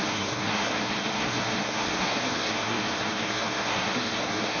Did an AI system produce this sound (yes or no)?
yes